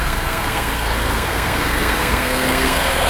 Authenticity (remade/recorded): remade